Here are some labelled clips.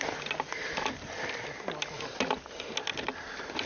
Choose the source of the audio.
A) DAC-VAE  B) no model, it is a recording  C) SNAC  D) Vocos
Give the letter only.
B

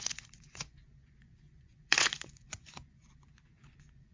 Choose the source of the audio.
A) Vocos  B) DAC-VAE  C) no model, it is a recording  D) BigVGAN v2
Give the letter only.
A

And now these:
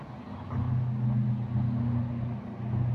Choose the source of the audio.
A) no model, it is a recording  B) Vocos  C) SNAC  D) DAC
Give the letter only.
A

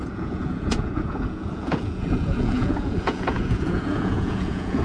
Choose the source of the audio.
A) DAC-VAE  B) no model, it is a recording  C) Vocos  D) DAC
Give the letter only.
C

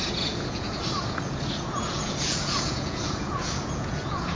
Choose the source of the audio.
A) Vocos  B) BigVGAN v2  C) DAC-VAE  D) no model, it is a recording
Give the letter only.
A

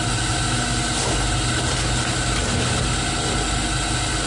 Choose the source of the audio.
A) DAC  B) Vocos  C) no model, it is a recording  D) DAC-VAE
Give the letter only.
C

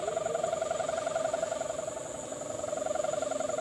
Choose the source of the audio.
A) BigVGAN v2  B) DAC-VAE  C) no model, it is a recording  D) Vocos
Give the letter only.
C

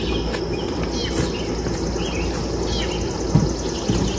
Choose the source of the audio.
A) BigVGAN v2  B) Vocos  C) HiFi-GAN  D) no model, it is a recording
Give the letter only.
D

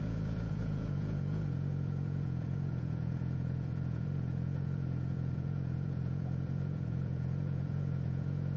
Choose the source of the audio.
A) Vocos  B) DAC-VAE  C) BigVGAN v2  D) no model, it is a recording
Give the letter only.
A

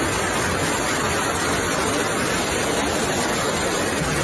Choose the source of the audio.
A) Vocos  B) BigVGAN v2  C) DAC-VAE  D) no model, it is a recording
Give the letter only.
D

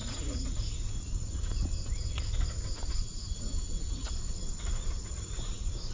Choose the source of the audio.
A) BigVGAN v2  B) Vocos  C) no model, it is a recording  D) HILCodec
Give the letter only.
B